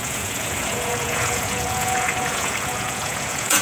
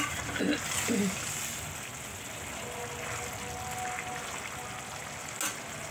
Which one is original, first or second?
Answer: second